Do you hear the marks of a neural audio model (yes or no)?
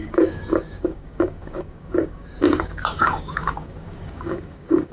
yes